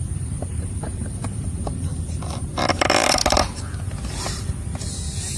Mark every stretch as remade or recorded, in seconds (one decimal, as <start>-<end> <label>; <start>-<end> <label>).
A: 0.0-1.9 remade; 1.9-2.4 recorded; 2.4-3.2 remade; 3.2-4.2 recorded; 4.2-5.4 remade